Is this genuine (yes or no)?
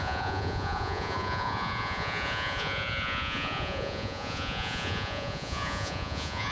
no